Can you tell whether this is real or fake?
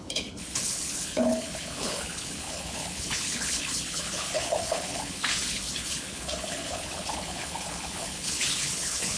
fake